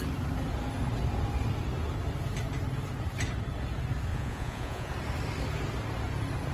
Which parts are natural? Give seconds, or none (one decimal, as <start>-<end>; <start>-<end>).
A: 0.0-4.1; 4.9-6.5